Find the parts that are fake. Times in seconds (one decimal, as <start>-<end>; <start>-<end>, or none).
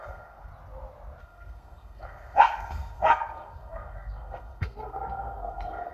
0.0-0.5; 1.2-5.9